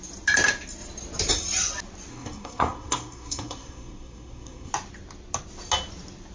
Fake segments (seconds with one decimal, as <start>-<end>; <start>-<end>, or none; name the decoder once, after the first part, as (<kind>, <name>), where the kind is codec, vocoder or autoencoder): 2.1-4.7 (codec, SNAC)